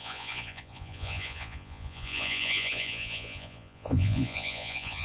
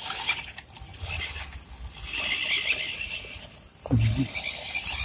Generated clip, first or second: first